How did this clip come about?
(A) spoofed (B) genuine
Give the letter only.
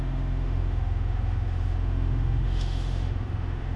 A